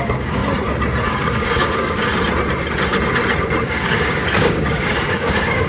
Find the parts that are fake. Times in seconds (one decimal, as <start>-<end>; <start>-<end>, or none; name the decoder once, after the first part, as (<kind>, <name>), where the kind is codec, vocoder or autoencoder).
0.0-0.4 (codec, DAC); 1.1-2.1; 3.6-5.7